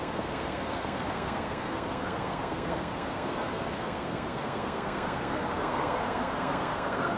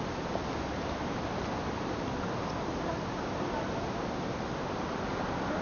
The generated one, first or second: first